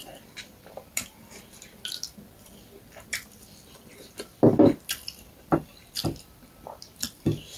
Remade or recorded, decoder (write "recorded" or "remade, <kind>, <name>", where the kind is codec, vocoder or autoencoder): remade, vocoder, BigVGAN v2